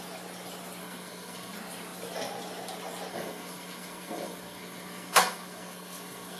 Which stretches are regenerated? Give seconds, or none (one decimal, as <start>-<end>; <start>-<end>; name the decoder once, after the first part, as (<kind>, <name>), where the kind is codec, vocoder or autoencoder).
0.8-1.5 (codec, SNAC); 3.1-6.4